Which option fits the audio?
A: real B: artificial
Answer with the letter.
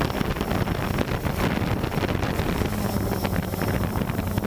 A